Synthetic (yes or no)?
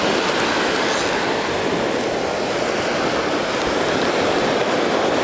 no